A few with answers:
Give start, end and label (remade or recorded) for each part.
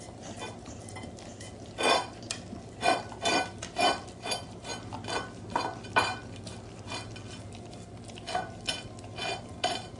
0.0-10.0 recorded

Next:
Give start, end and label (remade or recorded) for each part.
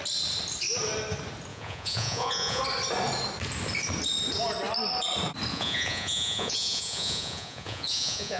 0.0-1.5 recorded; 1.5-2.6 remade; 2.6-5.5 recorded; 5.5-8.4 remade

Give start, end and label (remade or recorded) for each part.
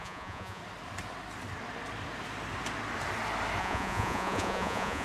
0.0-0.6 remade; 0.6-3.6 recorded; 3.6-5.0 remade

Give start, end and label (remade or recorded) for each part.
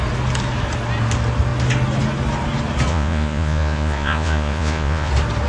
0.0-2.9 recorded; 2.9-5.1 remade; 5.1-5.5 recorded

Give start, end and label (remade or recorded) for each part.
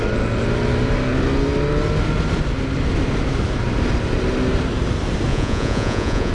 0.0-5.3 recorded; 5.3-6.3 remade